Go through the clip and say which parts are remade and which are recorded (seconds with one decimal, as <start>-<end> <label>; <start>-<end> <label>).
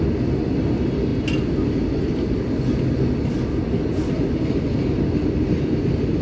0.0-6.2 recorded